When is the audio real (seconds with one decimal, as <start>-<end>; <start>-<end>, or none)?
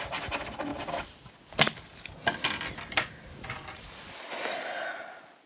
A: 0.0-5.5